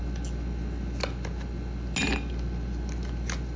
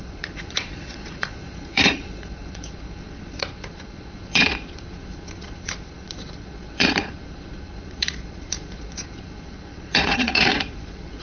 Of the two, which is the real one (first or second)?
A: first